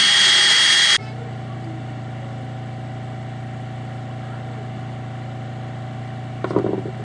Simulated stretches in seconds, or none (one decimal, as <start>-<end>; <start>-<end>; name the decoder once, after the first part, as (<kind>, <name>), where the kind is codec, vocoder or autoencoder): none